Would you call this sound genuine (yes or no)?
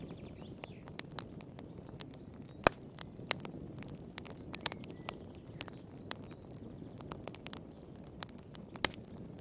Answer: yes